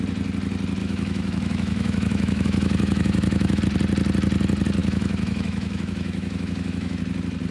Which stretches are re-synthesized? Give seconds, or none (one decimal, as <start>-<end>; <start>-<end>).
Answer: 0.8-3.6; 4.8-7.0